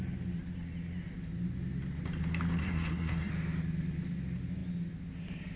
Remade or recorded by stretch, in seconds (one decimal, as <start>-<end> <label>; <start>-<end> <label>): 0.0-2.6 recorded; 2.6-3.3 remade; 3.3-5.6 recorded